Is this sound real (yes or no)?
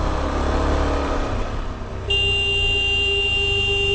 yes